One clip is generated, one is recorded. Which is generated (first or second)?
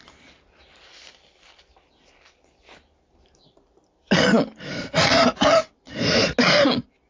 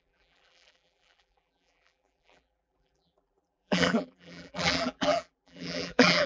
second